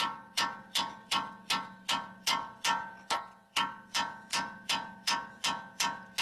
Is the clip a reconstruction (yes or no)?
yes